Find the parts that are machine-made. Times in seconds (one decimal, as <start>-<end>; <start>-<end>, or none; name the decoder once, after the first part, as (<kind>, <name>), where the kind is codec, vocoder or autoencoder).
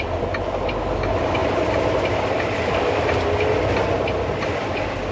none